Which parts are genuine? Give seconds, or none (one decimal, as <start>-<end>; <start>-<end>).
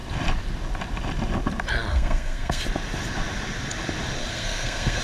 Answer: 0.0-1.9; 2.6-4.2